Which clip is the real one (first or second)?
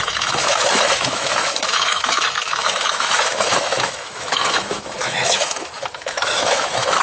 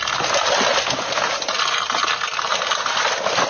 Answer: second